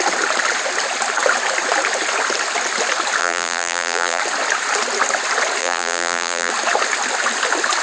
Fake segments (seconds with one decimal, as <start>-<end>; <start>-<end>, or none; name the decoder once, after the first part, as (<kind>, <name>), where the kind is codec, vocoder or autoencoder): 3.2-4.2 (vocoder, BigVGAN v2); 5.6-6.5

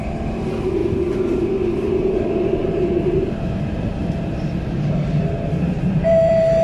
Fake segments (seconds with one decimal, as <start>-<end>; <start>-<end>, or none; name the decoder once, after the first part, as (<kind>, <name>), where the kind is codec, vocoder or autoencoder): 0.0-0.8 (vocoder, BigVGAN v2); 1.9-6.6

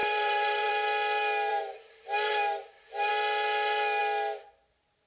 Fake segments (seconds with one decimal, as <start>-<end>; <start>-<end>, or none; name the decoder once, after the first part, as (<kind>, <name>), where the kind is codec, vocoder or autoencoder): 0.0-0.7 (vocoder, BigVGAN v2); 1.5-3.1

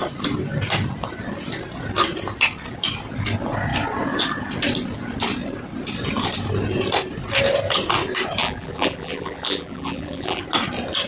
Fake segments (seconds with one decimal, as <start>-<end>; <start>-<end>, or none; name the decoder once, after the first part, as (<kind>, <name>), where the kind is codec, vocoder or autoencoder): 8.4-10.4 (vocoder, BigVGAN v2)

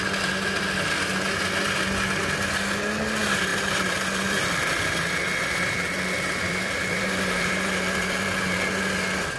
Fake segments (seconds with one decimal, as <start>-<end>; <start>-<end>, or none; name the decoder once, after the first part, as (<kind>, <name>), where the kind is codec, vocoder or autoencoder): 3.5-8.4 (vocoder, BigVGAN v2)